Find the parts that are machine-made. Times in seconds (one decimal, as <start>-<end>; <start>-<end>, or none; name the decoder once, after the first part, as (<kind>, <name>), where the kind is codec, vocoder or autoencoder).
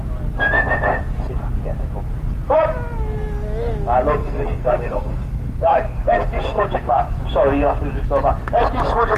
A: 4.2-7.2 (codec, SNAC)